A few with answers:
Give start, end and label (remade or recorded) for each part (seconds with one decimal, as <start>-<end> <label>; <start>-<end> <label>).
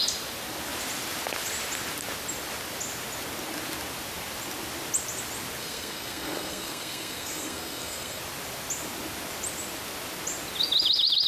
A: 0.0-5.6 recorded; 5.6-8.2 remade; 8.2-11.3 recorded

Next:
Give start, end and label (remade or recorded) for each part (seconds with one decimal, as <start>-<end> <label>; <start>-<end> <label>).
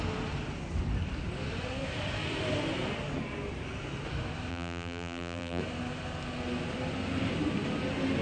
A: 0.0-4.5 recorded; 4.5-5.6 remade; 5.6-8.2 recorded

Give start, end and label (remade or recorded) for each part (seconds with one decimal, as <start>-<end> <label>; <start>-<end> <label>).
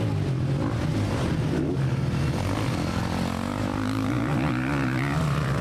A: 0.0-0.9 recorded; 0.9-1.7 remade; 1.7-3.7 recorded; 3.7-5.6 remade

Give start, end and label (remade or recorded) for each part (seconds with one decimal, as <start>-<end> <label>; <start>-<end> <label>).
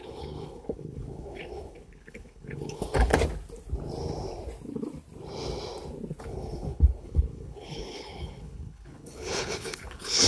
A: 0.0-3.1 remade; 3.1-6.2 recorded; 6.2-10.3 remade